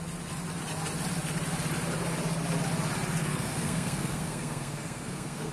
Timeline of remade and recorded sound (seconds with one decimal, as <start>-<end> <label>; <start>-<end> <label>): 0.0-3.2 recorded; 3.2-5.5 remade